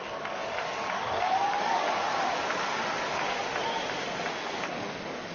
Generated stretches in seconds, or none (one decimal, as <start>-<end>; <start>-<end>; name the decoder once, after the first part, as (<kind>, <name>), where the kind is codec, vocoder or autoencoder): 0.0-3.4 (codec, DAC); 4.0-5.3